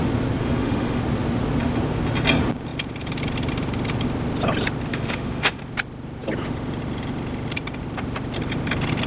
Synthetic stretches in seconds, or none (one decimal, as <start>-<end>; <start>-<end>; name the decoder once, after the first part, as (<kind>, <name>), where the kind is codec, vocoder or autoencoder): 0.4-1.0 (autoencoder, DAC-VAE); 4.9-5.6